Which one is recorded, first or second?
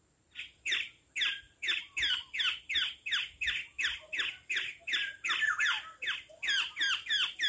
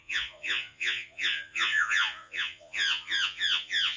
first